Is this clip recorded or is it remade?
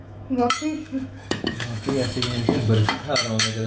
remade